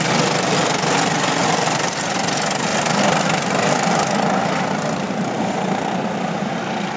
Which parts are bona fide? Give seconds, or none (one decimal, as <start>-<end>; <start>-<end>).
0.0-1.4; 2.0-2.7